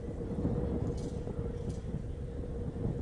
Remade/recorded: recorded